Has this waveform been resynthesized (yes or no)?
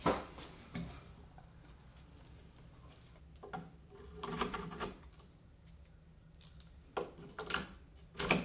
no